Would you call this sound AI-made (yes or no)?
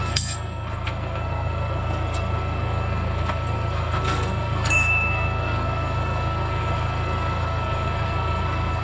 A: yes